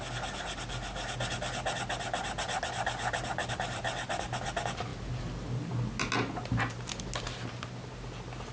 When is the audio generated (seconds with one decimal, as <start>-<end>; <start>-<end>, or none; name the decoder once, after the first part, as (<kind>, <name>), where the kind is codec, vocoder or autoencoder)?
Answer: none